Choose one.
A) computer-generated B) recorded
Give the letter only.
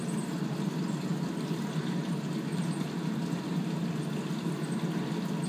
B